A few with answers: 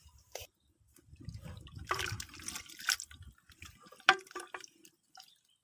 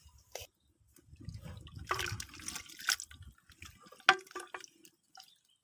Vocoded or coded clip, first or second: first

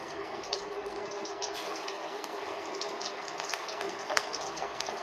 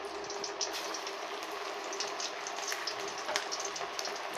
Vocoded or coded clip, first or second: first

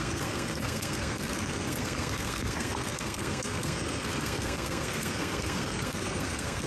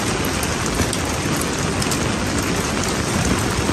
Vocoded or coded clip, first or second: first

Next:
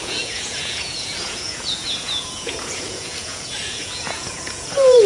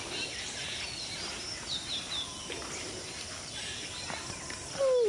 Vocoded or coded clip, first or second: first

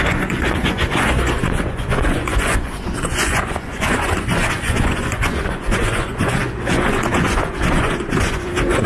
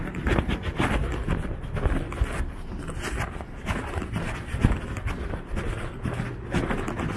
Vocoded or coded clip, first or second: first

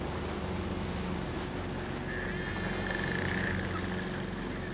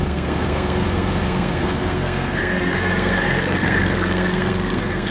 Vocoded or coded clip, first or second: second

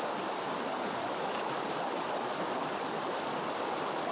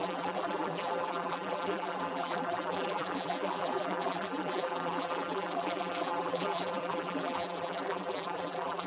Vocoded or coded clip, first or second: second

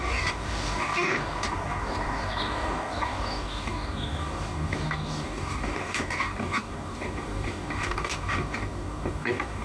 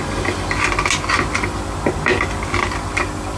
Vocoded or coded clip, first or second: first